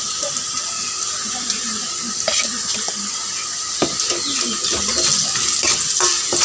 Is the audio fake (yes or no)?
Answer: no